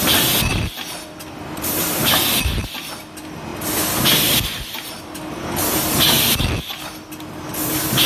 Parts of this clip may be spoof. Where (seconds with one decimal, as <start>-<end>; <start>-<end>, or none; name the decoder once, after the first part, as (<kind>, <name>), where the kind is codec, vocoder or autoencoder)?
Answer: none